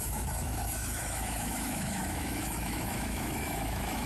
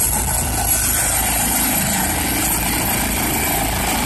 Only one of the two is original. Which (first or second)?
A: second